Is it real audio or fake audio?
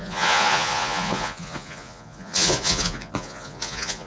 fake